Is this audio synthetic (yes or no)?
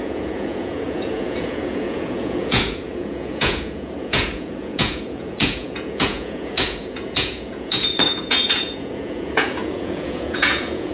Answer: yes